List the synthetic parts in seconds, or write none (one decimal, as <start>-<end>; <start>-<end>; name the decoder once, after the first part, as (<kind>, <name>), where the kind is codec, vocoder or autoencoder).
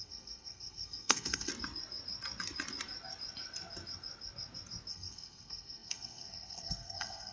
0.0-1.5 (codec, SNAC); 4.9-7.3